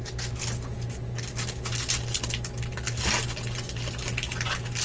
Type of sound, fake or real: real